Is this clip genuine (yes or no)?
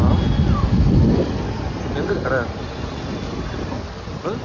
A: yes